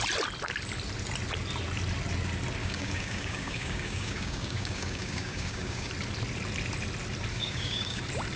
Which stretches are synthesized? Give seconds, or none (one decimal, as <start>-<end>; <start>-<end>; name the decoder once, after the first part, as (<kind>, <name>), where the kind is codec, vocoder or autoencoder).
2.6-5.9 (codec, DAC); 7.3-8.0